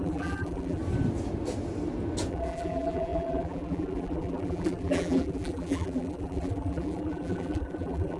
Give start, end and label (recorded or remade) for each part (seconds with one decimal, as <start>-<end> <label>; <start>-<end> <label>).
0.0-0.8 remade; 0.8-2.3 recorded; 2.3-8.2 remade